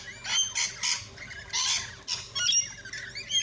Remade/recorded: recorded